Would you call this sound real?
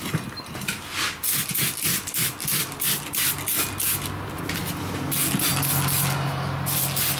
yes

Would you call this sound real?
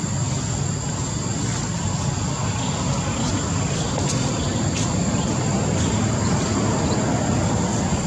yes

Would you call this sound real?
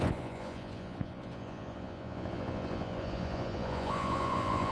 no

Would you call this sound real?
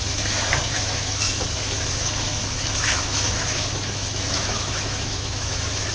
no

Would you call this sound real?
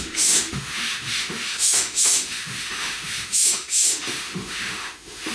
no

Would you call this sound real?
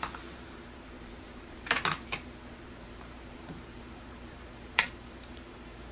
no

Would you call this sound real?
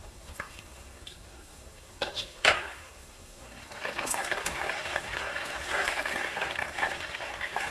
no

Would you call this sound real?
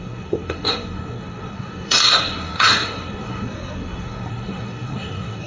no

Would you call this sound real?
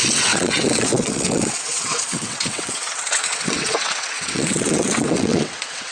no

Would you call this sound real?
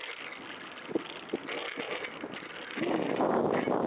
yes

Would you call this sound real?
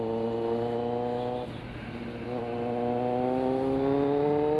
yes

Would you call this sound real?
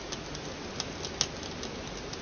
yes